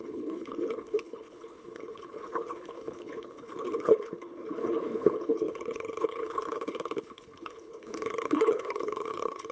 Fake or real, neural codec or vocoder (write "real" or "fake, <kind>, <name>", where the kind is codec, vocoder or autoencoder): fake, codec, HILCodec